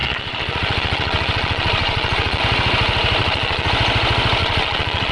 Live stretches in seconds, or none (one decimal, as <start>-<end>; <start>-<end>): 2.4-3.2; 3.7-4.4